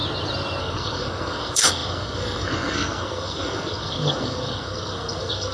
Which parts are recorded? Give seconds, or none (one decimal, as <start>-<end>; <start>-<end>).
0.0-0.6